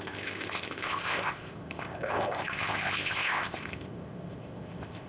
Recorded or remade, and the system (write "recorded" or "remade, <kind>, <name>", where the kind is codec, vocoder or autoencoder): remade, codec, ZipCodec